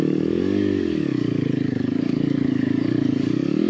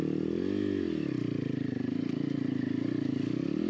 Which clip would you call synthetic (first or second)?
first